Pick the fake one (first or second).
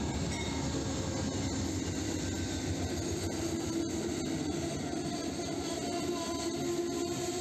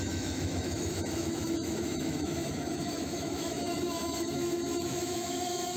second